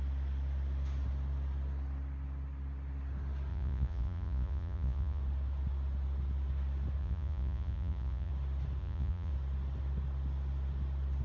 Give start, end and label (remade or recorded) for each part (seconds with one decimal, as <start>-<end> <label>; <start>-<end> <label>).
0.0-3.5 recorded; 3.5-5.2 remade; 5.2-7.0 recorded; 7.0-8.3 remade; 8.3-8.8 recorded; 8.8-9.3 remade; 9.3-11.2 recorded